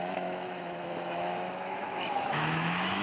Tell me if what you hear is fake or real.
fake